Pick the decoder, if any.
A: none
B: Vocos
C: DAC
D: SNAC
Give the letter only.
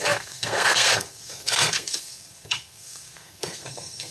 D